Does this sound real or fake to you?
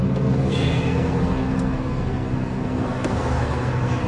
fake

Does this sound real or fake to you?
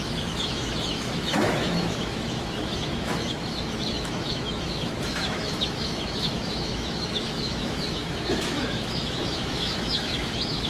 fake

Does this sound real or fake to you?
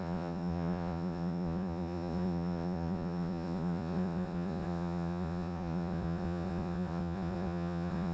fake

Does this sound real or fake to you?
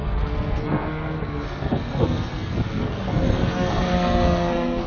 fake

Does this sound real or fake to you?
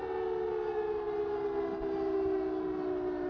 real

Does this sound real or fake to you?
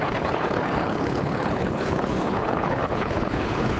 fake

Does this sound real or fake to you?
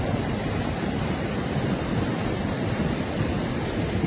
real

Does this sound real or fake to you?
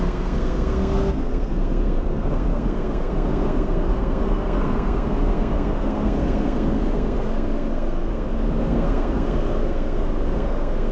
fake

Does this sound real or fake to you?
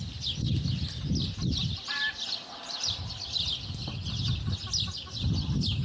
real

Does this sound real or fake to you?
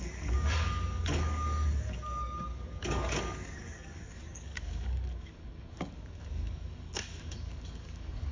fake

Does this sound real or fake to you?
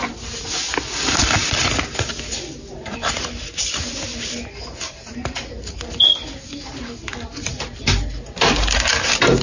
real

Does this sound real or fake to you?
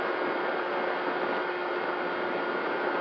real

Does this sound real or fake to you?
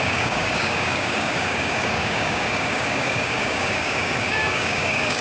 fake